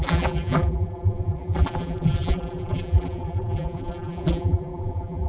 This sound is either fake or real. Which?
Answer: fake